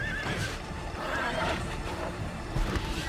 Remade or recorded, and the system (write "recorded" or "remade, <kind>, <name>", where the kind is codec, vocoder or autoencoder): remade, vocoder, BigVGAN v2